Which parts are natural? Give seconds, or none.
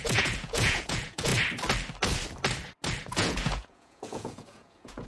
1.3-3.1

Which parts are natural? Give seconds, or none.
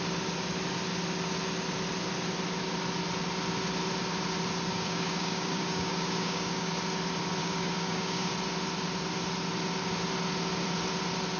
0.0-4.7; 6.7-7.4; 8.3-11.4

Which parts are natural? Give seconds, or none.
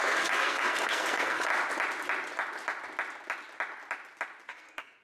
1.5-4.5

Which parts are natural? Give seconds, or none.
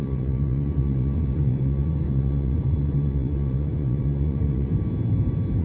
4.7-5.6